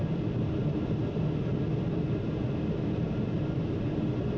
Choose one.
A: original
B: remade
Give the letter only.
A